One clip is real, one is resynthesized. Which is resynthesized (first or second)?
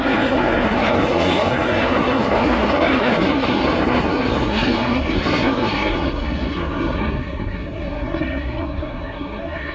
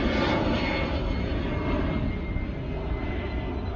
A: first